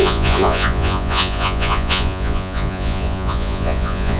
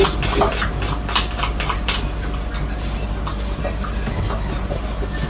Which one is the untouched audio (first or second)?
second